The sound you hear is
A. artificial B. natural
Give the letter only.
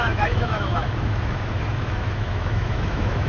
A